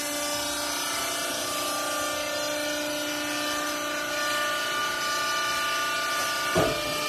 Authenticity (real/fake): real